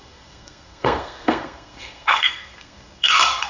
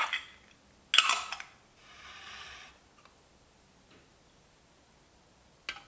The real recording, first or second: second